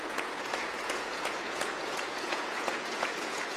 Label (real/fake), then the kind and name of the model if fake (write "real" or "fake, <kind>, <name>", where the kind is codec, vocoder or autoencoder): fake, vocoder, Vocos